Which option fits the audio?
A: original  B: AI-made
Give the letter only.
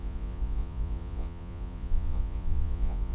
B